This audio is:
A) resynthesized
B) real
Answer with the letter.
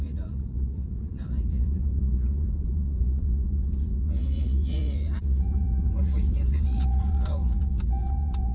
A